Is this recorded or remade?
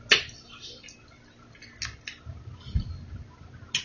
recorded